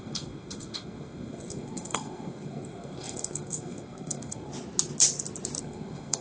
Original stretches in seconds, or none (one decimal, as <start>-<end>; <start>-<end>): 4.5-5.6